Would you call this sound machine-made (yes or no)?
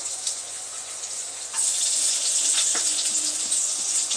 yes